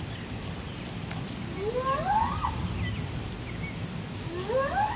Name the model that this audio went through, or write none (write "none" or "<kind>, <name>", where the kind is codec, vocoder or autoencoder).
none